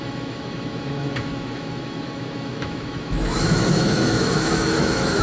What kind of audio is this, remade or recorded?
remade